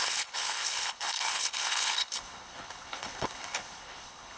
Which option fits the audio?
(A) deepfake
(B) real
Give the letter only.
A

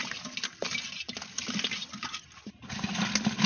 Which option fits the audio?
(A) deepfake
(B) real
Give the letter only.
B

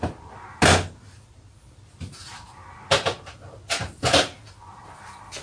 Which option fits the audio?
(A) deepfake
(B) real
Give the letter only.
B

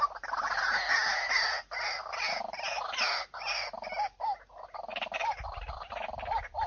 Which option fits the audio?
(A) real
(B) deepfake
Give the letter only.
A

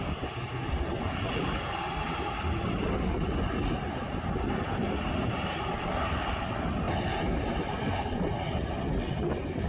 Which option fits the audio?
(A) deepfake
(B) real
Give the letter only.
B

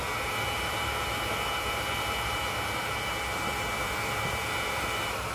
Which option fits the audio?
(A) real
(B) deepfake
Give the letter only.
B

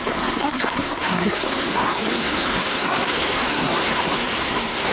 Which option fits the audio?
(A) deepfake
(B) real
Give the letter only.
A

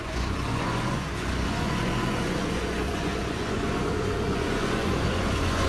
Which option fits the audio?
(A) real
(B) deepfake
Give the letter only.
B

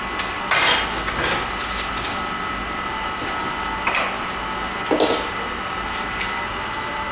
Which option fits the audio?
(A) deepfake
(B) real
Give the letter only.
B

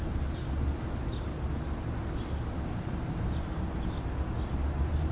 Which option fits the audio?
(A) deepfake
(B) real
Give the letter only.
B